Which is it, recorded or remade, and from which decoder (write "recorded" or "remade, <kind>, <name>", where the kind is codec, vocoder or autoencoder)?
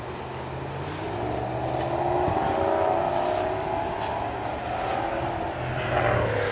recorded